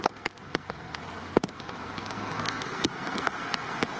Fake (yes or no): yes